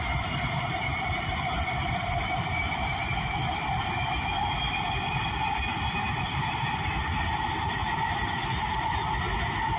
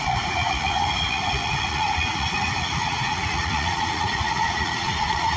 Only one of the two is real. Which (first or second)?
first